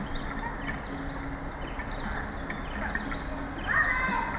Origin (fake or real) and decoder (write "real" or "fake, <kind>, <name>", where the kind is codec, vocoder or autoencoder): real